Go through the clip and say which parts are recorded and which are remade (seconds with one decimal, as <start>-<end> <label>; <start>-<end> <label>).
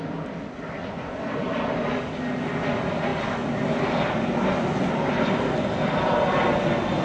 0.0-0.8 recorded; 0.8-1.3 remade; 1.3-7.0 recorded